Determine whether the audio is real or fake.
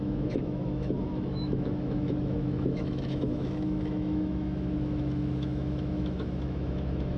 fake